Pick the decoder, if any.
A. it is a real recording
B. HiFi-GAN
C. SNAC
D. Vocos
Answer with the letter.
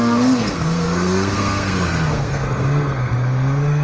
C